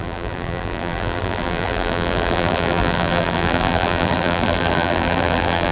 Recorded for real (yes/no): no